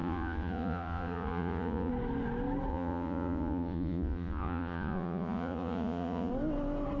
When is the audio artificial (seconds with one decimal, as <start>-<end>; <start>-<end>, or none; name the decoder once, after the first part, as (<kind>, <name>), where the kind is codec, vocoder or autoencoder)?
0.0-1.9 (vocoder, Vocos); 2.7-6.3

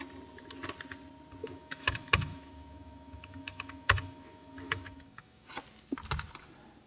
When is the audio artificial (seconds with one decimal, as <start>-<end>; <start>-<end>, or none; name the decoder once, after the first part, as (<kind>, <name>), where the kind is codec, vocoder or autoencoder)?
1.4-5.5 (autoencoder, DAC-VAE)

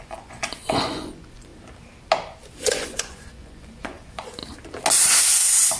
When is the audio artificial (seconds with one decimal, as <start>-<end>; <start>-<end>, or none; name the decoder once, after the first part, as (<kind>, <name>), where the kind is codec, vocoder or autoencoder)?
0.0-1.5 (vocoder, Vocos); 2.6-4.4

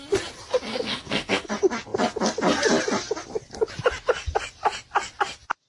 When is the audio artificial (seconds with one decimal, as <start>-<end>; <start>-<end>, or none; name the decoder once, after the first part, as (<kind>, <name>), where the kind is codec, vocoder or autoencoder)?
0.7-1.5 (codec, SNAC)

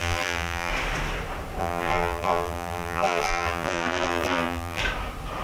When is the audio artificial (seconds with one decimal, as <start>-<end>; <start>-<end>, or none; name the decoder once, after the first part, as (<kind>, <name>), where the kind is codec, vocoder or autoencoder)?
0.0-0.7 (vocoder, BigVGAN v2); 1.6-4.8